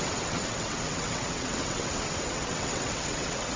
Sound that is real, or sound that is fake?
fake